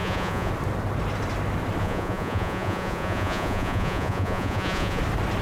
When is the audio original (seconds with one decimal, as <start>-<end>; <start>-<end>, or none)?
0.5-1.8; 5.0-5.4